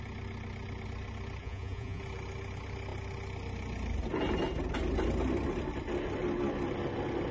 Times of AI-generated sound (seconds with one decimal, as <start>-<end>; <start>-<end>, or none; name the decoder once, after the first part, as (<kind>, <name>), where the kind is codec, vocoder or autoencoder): 1.4-2.0 (vocoder, Vocos)